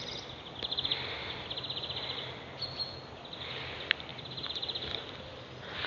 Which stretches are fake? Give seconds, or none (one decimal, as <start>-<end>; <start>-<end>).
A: none